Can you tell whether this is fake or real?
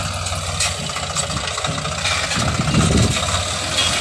real